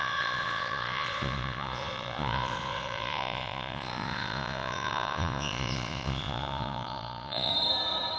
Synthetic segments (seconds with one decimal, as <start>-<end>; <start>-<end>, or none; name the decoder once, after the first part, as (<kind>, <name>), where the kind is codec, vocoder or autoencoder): 0.0-7.5 (vocoder, Vocos)